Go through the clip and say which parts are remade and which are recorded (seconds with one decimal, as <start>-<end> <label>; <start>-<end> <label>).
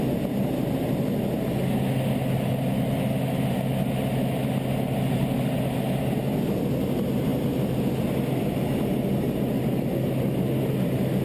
0.0-11.2 recorded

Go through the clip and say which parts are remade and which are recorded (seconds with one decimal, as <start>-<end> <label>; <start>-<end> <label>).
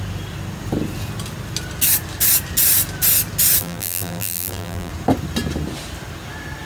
0.0-3.6 recorded; 3.6-4.9 remade; 4.9-6.7 recorded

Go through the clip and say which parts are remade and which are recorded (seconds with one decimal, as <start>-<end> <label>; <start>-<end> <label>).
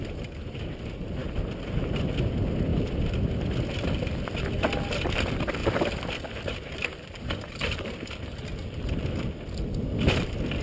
0.0-2.7 recorded; 2.7-4.4 remade; 4.4-5.6 recorded; 5.6-8.1 remade; 8.1-10.6 recorded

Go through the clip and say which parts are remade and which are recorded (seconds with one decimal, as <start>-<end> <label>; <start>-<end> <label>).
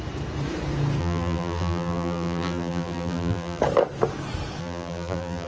0.0-1.0 recorded; 1.0-3.6 remade; 3.6-4.6 recorded; 4.6-5.5 remade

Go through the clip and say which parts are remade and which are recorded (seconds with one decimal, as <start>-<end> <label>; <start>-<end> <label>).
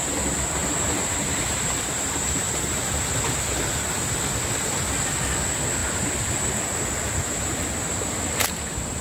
0.0-0.6 recorded; 0.6-4.1 remade; 4.1-9.0 recorded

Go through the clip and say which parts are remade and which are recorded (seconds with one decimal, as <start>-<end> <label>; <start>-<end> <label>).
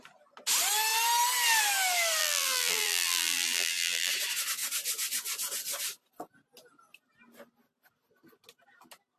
0.0-2.2 recorded; 2.2-4.1 remade; 4.1-9.2 recorded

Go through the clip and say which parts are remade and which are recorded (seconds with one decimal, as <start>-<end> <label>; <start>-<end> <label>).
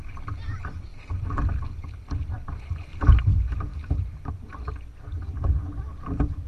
0.0-3.7 recorded; 3.7-4.3 remade; 4.3-6.5 recorded